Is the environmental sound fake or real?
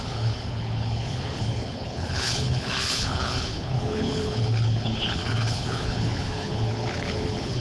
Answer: fake